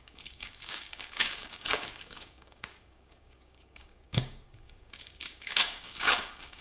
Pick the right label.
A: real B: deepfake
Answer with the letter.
B